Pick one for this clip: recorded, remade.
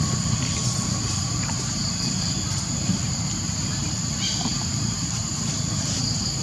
remade